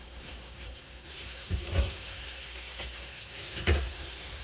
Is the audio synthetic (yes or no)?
yes